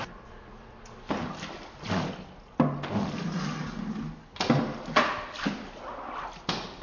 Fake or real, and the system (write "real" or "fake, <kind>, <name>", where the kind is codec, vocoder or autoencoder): real